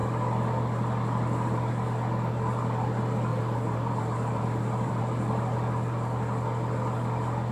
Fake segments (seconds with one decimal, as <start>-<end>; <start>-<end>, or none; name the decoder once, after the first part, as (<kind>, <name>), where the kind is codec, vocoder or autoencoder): 3.3-5.0 (vocoder, BigVGAN v2)